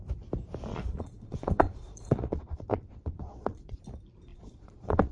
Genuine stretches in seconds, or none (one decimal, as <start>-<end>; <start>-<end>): 0.0-0.7; 3.8-4.3